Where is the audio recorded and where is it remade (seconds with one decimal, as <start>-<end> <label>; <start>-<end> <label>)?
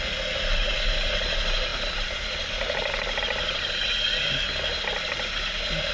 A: 0.0-5.9 recorded